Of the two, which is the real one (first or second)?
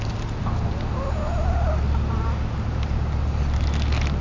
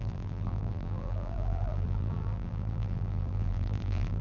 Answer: first